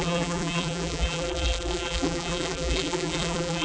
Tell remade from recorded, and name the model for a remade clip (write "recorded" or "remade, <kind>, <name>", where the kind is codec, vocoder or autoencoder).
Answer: remade, vocoder, BigVGAN v2